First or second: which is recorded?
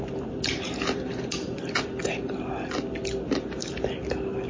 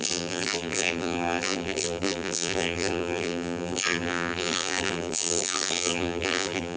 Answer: first